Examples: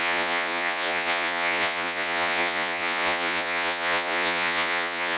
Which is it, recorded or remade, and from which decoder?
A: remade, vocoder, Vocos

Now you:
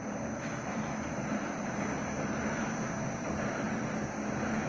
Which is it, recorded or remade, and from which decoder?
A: recorded